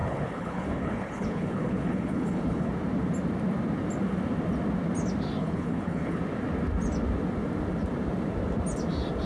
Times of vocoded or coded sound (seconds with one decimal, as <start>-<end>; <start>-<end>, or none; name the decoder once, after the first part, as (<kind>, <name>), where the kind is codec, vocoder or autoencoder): 0.0-2.7 (codec, HILCodec); 5.4-6.2